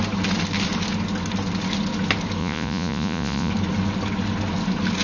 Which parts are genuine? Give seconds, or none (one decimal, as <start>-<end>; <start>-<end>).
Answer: 0.0-2.4; 3.5-5.0